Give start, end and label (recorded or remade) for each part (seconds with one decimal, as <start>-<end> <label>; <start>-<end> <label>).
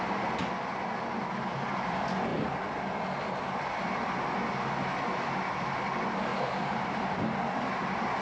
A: 0.0-0.7 recorded; 0.7-1.3 remade; 1.3-2.3 recorded; 2.3-4.3 remade; 4.3-6.3 recorded; 6.3-7.2 remade; 7.2-8.2 recorded